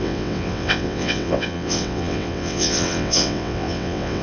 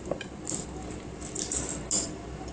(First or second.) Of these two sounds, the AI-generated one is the first